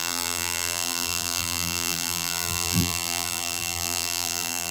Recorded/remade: remade